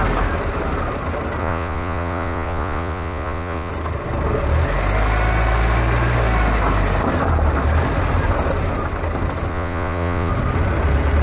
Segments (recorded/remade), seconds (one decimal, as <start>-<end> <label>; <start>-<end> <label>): 0.0-1.4 recorded; 1.4-3.7 remade; 3.7-9.5 recorded; 9.5-10.3 remade; 10.3-11.2 recorded